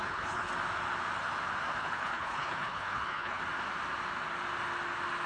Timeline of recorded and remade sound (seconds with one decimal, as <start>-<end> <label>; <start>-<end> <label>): 0.0-0.5 remade; 0.5-1.8 recorded; 1.8-3.4 remade; 3.4-5.3 recorded